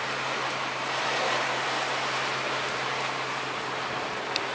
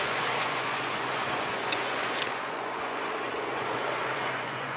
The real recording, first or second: first